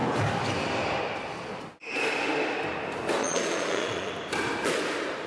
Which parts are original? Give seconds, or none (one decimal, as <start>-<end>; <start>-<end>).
0.0-3.2; 4.1-5.3